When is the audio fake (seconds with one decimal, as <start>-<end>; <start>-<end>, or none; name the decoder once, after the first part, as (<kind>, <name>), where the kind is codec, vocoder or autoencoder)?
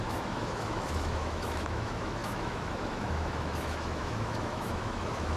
0.0-5.4 (autoencoder, DAC-VAE)